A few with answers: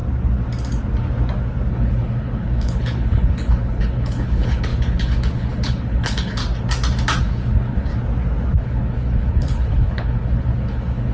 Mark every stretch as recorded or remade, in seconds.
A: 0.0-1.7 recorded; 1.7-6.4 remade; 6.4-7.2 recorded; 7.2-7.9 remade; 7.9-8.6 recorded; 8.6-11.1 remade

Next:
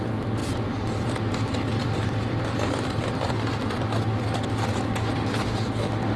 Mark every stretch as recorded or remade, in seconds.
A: 0.0-0.4 recorded; 0.4-3.9 remade; 3.9-5.1 recorded; 5.1-5.7 remade; 5.7-6.2 recorded

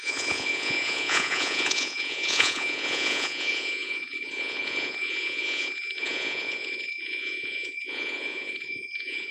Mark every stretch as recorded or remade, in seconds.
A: 0.0-9.3 remade